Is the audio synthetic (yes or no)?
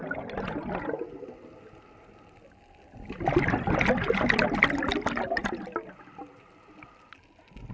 no